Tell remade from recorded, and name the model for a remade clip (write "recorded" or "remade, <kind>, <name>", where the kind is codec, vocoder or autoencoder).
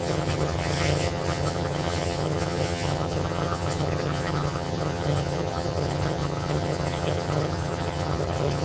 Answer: remade, vocoder, HiFi-GAN